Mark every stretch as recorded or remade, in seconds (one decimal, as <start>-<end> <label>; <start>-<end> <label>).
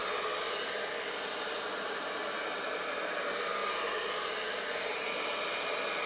0.0-6.1 recorded